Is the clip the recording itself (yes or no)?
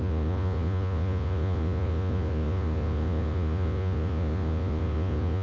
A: no